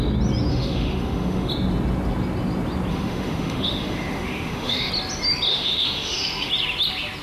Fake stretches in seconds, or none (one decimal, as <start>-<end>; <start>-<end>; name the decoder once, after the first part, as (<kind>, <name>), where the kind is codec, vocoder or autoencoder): 0.5-1.5 (autoencoder, DAC-VAE); 2.9-4.9; 5.5-6.5